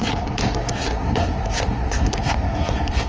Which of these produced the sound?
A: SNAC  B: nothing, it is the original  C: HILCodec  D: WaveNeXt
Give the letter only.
A